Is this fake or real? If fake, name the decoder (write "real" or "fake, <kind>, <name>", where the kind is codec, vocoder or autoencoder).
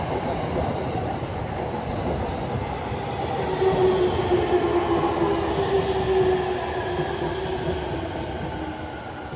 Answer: real